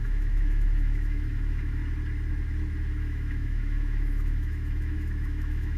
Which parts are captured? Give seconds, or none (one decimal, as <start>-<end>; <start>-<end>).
1.8-2.9